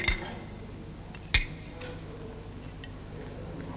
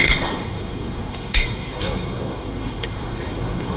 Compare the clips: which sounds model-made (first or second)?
second